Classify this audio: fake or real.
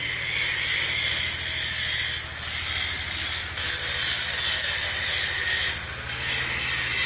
real